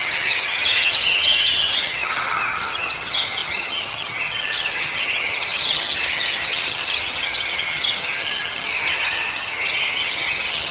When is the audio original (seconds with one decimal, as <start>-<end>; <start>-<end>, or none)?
none